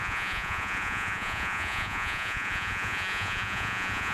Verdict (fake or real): fake